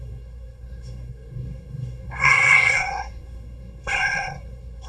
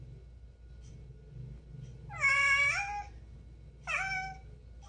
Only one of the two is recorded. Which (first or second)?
second